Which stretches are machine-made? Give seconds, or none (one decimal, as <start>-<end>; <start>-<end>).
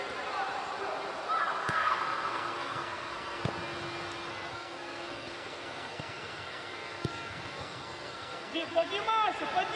1.6-3.4; 4.3-8.9